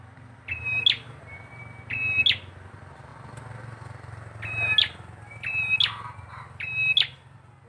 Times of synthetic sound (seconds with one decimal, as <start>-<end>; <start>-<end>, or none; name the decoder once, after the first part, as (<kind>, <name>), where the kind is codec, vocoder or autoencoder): none